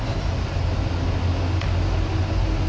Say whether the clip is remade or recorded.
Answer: recorded